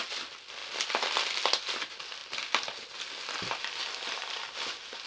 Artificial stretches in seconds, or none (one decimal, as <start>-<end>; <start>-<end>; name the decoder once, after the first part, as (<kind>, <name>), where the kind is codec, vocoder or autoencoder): none